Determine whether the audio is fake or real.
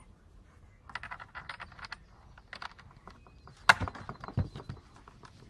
real